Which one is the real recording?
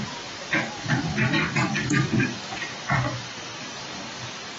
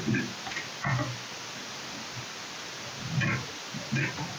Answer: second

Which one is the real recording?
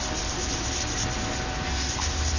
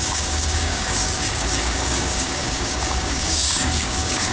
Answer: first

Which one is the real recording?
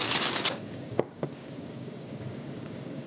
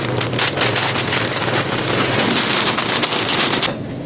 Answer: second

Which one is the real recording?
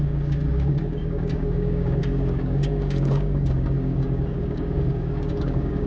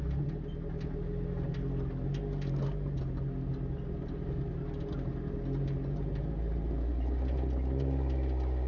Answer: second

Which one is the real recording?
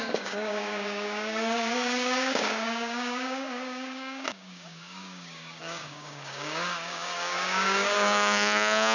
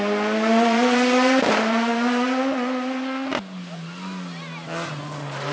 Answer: second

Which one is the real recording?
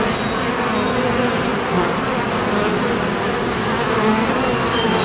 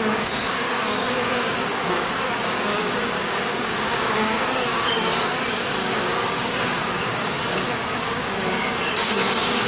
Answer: first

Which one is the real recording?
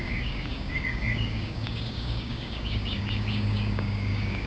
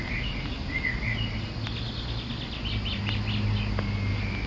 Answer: second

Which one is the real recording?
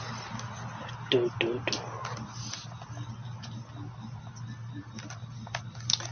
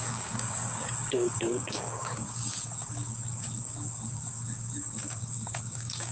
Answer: first